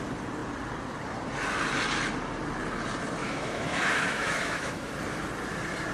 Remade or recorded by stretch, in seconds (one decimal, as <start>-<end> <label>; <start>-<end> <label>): 0.0-3.2 recorded; 3.2-4.9 remade; 4.9-5.9 recorded